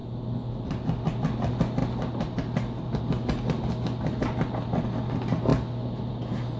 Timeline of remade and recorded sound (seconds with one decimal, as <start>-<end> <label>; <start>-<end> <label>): 0.0-6.6 recorded